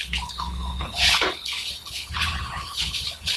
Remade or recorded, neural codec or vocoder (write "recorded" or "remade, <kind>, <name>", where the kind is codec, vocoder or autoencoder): remade, codec, HILCodec